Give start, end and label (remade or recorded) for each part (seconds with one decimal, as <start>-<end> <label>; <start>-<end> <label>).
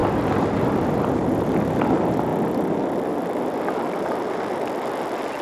0.0-5.4 recorded